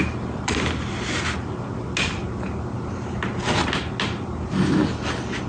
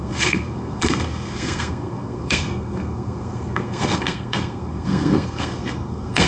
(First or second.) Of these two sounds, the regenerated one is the second